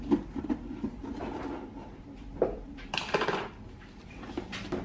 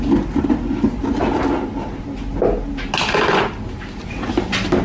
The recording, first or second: second